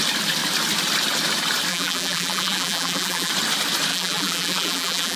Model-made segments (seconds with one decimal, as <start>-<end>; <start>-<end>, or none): 1.7-3.3; 3.9-5.2